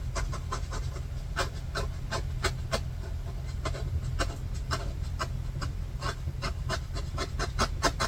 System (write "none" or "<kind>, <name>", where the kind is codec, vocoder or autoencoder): none